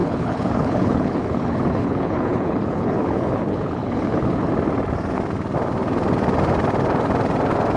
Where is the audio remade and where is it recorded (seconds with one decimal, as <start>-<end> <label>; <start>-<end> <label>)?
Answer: 0.0-4.5 remade; 4.5-7.8 recorded